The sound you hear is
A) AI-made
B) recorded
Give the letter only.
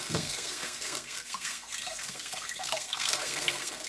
A